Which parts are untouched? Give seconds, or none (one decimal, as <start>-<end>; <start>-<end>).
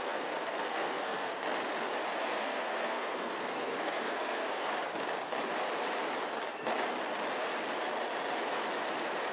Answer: 1.3-2.2; 4.7-9.3